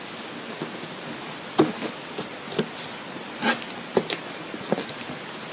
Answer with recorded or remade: recorded